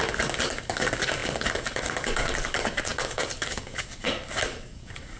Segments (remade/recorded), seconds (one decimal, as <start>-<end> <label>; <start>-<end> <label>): 0.0-5.2 remade